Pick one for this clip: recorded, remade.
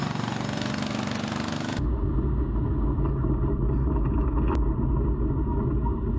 recorded